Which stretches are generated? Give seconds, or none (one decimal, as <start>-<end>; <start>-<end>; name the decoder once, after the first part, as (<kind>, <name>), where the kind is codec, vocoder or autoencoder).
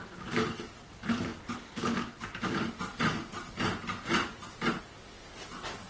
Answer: none